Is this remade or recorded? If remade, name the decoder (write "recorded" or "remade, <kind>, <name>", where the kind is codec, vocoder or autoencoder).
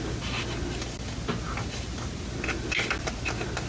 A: recorded